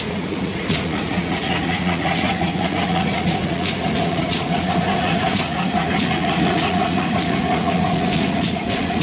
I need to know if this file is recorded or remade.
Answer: remade